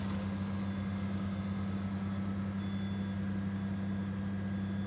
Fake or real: real